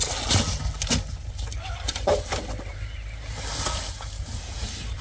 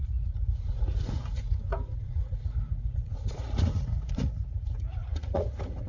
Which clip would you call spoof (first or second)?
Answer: second